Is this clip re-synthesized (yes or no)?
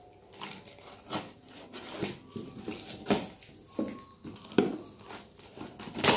no